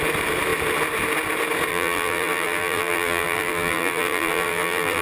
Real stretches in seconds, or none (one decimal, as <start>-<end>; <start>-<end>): 0.0-1.7